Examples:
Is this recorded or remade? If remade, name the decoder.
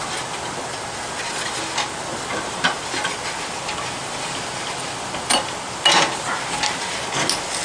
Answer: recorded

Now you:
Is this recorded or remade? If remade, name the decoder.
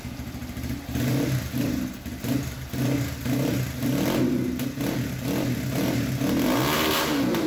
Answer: recorded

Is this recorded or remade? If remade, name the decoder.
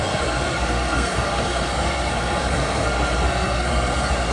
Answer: remade, codec, SNAC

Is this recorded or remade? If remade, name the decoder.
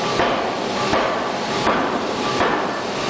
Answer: recorded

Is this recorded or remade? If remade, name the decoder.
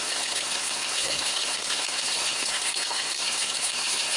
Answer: remade, codec, SNAC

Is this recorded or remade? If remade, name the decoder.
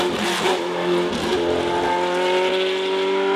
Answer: recorded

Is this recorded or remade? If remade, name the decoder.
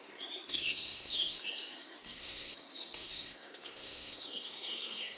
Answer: remade, codec, SNAC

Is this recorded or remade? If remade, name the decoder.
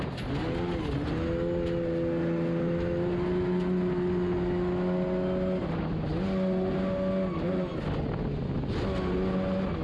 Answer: recorded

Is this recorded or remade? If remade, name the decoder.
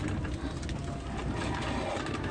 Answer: recorded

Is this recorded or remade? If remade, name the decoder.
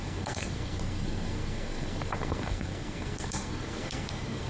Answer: remade, codec, SNAC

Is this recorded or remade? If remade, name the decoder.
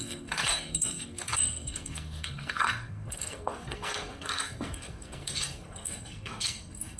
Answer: remade, codec, SNAC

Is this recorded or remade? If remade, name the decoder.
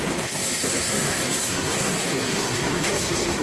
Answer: remade, codec, SNAC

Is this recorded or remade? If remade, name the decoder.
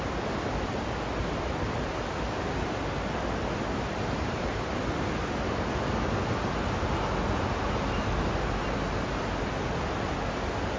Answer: recorded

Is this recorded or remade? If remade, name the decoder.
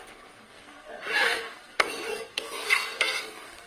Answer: remade, codec, SNAC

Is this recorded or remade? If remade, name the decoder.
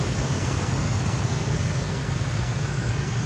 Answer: remade, codec, SNAC